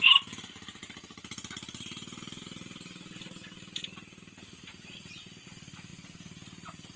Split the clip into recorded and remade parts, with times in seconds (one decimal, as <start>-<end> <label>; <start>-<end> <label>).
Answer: 0.0-7.0 recorded